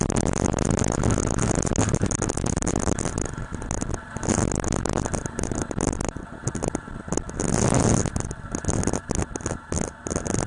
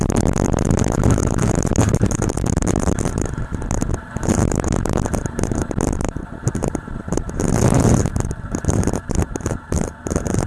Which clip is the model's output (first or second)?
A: second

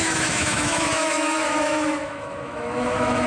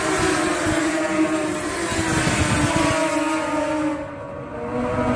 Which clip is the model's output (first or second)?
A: first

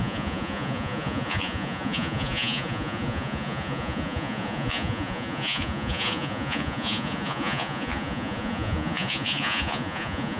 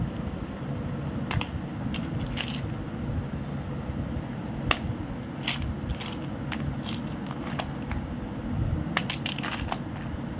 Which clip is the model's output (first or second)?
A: first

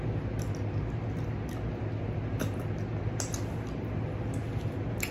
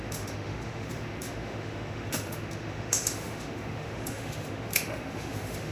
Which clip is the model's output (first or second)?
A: second